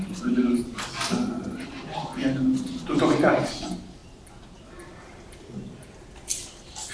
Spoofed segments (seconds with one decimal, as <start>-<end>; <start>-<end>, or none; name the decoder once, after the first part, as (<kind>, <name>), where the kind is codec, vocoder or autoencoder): none